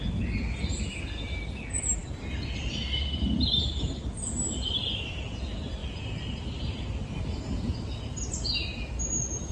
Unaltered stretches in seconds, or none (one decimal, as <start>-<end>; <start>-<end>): 0.0-9.5